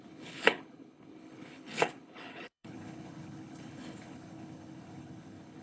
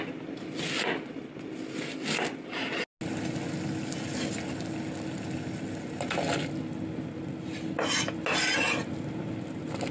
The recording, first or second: second